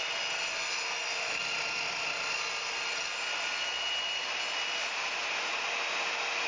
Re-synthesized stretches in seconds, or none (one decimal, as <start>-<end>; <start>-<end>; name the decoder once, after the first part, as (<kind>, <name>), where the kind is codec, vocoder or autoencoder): none